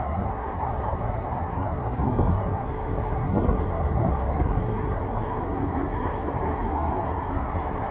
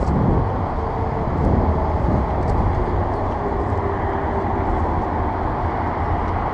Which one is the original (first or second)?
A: second